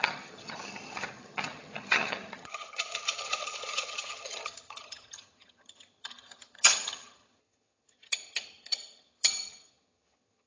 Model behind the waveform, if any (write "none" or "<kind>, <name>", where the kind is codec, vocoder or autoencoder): vocoder, HiFi-GAN